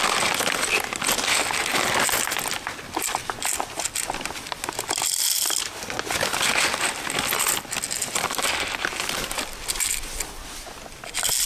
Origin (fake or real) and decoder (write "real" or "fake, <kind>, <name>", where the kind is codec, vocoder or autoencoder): real